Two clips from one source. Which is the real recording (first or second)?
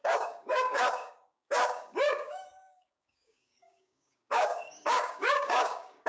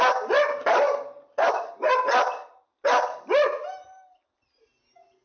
second